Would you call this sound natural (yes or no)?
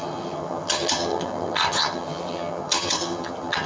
no